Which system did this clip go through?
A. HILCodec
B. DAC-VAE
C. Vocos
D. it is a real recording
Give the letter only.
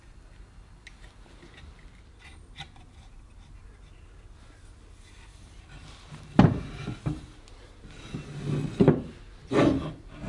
D